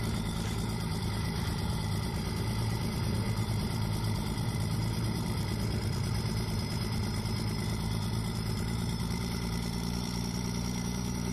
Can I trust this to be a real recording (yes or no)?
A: no